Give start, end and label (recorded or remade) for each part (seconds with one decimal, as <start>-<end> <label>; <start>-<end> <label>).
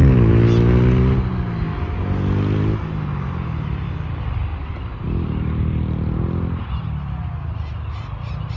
0.0-8.6 recorded